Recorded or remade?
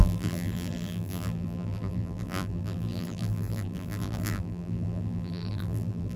remade